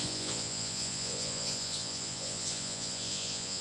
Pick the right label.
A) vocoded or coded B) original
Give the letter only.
A